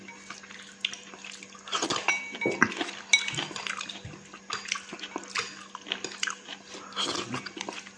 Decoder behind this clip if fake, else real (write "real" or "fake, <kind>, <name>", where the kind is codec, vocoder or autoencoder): real